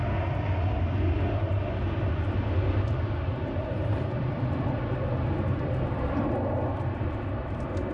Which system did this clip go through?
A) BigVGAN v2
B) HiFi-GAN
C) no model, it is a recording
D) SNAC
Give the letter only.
C